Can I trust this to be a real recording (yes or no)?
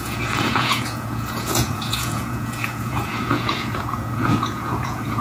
no